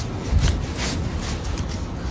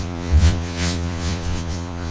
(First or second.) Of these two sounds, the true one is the first